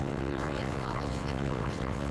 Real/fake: fake